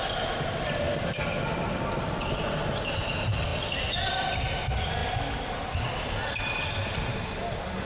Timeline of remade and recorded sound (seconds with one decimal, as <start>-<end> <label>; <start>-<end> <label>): 0.0-7.8 recorded